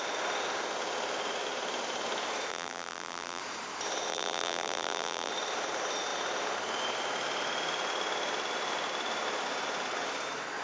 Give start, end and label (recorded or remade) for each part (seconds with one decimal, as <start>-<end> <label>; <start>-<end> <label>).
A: 0.0-2.5 recorded; 2.5-3.4 remade; 3.4-4.1 recorded; 4.1-5.3 remade; 5.3-10.6 recorded